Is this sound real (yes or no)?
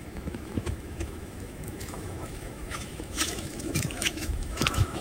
no